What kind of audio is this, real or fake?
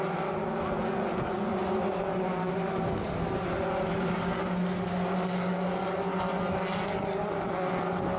real